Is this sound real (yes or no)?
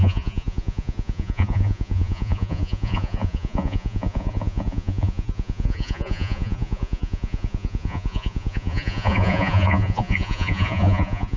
no